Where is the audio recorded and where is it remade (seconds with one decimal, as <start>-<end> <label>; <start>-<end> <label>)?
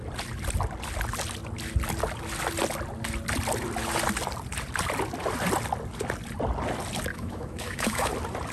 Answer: 0.0-7.1 recorded; 7.1-8.1 remade; 8.1-8.5 recorded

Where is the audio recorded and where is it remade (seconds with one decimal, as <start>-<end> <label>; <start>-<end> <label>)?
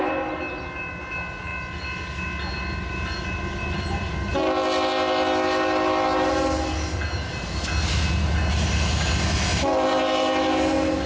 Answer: 0.0-11.1 recorded